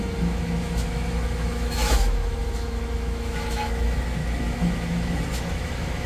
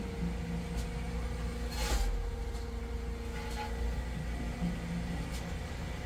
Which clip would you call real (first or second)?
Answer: second